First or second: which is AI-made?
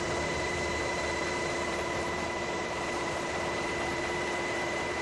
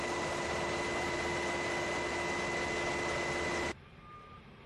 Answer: first